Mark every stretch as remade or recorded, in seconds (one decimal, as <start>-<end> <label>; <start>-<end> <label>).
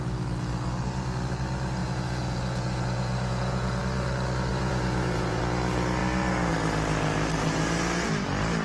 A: 0.0-1.8 recorded; 1.8-3.8 remade; 3.8-4.5 recorded; 4.5-5.4 remade; 5.4-8.6 recorded